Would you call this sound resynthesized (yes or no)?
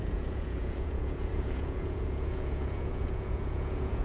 yes